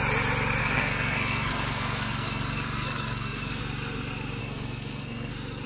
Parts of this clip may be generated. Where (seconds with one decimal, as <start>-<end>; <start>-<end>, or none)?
0.6-3.6; 4.4-5.3